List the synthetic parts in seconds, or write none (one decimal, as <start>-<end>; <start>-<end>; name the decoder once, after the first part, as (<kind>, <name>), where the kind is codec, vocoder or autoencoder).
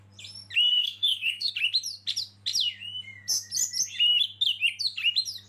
0.7-1.5 (codec, SNAC)